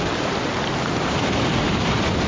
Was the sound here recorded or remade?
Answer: recorded